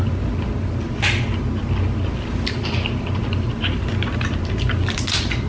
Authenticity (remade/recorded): recorded